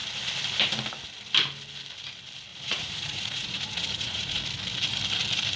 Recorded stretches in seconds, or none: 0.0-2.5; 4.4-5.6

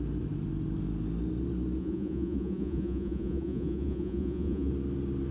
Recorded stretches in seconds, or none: 0.0-1.8; 4.7-5.3

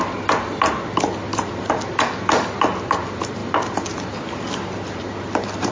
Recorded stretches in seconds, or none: 0.0-5.7

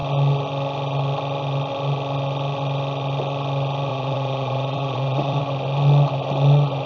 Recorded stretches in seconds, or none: 0.0-3.9; 5.4-6.9

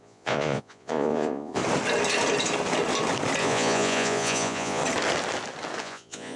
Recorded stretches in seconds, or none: 1.6-3.4; 4.8-5.8